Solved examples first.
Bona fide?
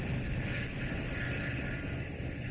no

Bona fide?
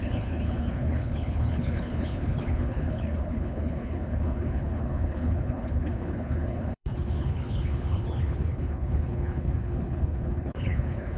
no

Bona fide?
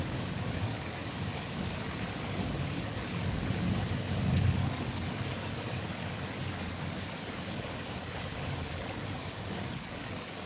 no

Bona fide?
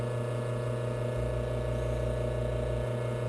yes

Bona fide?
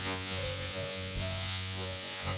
no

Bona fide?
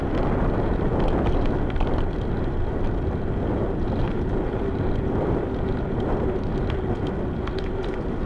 yes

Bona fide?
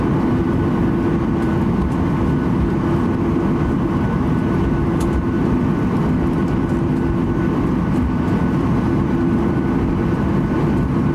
yes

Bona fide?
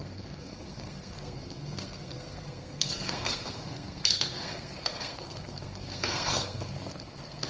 no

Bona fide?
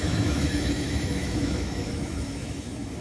no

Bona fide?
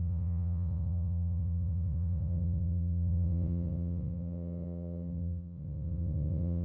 no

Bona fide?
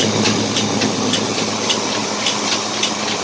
yes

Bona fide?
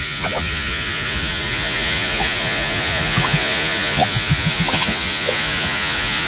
no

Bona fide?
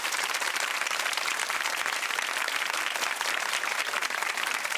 no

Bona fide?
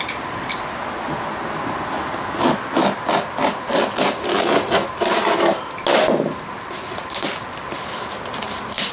yes